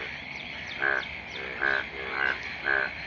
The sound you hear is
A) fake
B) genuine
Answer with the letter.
B